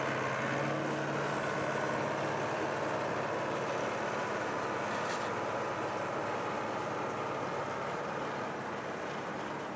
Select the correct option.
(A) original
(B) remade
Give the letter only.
A